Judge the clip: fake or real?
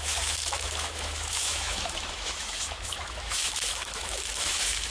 fake